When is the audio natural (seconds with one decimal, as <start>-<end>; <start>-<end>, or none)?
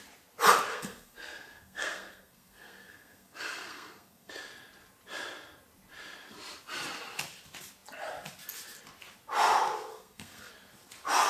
0.0-0.7; 4.3-9.9; 10.5-11.3